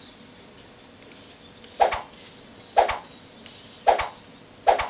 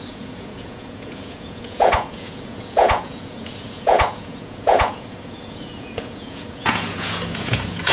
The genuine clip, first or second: first